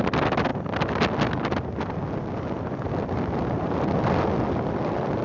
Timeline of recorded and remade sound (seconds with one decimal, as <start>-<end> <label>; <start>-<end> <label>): 0.0-5.2 recorded

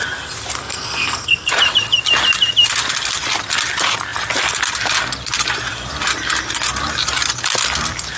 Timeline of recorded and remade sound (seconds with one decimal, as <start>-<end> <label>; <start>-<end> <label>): 0.0-0.6 recorded; 0.6-1.5 remade; 1.5-8.2 recorded

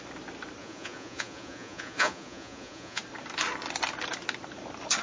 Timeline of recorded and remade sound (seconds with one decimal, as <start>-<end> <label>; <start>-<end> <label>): 0.0-0.6 recorded; 0.6-3.0 remade; 3.0-5.0 recorded

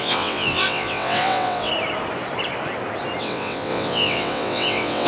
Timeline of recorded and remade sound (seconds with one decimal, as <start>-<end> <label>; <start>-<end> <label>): 0.0-1.7 remade; 1.7-3.2 recorded; 3.2-5.1 remade

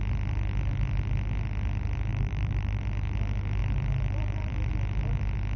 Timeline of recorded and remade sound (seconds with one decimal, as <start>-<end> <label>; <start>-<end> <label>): 0.0-2.1 recorded; 2.1-2.8 remade; 2.8-3.6 recorded; 3.6-4.7 remade; 4.7-5.6 recorded

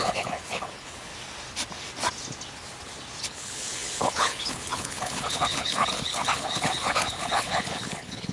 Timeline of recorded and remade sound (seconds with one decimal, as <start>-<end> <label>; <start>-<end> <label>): 0.0-1.1 remade; 1.1-3.2 recorded; 3.2-8.3 remade